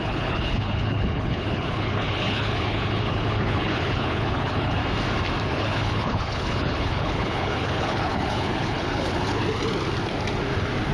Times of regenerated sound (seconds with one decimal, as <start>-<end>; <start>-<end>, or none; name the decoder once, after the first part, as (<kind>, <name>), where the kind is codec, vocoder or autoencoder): 0.0-4.8 (codec, HILCodec); 5.5-9.4